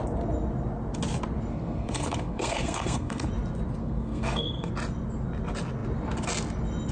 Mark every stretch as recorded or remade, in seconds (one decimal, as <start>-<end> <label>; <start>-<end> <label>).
0.0-1.5 recorded; 1.5-3.3 remade; 3.3-3.8 recorded; 3.8-4.7 remade; 4.7-6.9 recorded